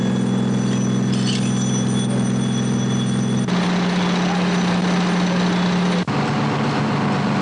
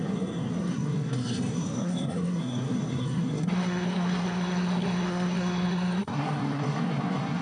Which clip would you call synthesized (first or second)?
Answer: second